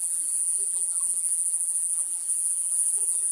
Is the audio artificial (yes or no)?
yes